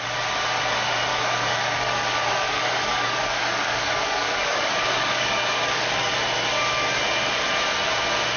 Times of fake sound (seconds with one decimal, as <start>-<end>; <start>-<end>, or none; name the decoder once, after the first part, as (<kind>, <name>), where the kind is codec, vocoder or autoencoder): 1.1-6.1 (codec, DAC)